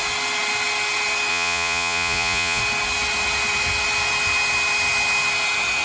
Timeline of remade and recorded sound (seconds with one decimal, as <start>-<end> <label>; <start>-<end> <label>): 0.0-1.3 recorded; 1.3-2.6 remade; 2.6-5.8 recorded